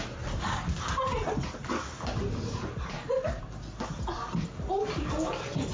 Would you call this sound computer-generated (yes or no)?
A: no